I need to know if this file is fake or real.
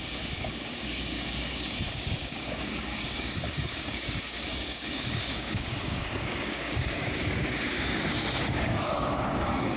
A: fake